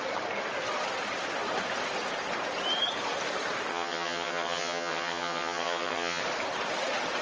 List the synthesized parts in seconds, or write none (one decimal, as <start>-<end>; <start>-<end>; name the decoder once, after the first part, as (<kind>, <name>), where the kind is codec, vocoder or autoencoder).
3.7-6.2 (vocoder, HiFi-GAN)